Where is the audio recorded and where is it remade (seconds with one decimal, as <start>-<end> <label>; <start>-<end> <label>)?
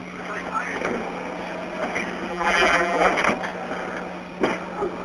0.0-2.3 recorded; 2.3-3.1 remade; 3.1-5.0 recorded